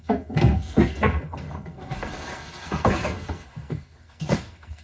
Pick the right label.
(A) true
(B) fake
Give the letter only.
B